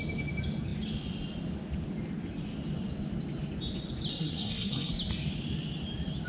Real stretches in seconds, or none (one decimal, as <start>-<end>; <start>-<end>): 0.0-4.1; 4.9-6.3